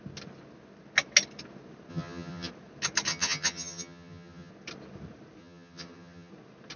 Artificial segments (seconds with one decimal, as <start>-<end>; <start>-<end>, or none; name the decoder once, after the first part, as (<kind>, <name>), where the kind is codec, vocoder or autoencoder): 1.9-2.5 (vocoder, HiFi-GAN); 3.1-4.5; 5.4-6.3